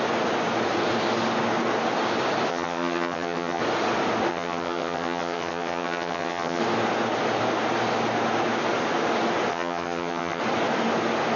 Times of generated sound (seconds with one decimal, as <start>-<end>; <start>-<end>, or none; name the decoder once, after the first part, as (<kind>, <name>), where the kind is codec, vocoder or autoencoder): 2.5-3.6 (vocoder, HiFi-GAN); 4.3-6.6; 9.5-10.4